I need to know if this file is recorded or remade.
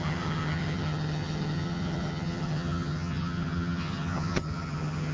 remade